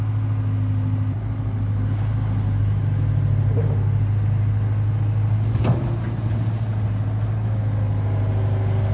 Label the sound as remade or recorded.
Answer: recorded